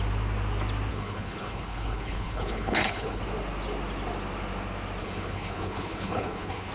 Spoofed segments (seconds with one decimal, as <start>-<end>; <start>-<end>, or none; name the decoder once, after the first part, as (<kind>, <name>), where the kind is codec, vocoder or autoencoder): 0.9-3.2 (codec, HILCodec); 5.0-6.7